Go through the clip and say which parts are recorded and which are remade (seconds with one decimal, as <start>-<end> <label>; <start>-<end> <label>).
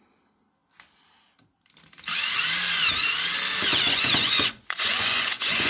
0.0-3.7 recorded; 3.7-5.7 remade